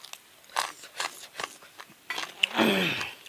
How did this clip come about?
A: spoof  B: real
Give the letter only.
B